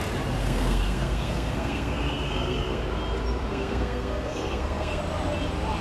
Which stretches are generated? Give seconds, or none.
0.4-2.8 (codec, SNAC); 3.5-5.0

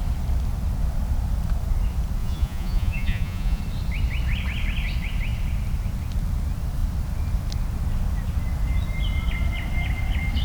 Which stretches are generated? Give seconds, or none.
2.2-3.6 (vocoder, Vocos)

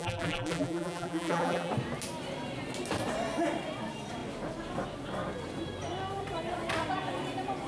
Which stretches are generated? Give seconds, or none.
0.0-1.7 (vocoder, BigVGAN v2)

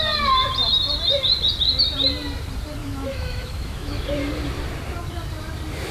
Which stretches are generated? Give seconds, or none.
2.8-4.0 (autoencoder, DAC-VAE)